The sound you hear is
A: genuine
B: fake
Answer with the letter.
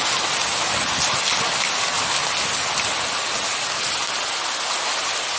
A